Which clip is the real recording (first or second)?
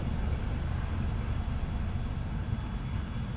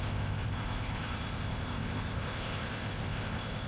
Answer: first